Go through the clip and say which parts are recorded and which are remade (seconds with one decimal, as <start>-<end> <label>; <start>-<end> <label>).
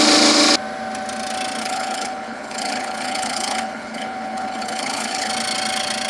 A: 0.0-1.6 recorded; 1.6-5.3 remade; 5.3-6.1 recorded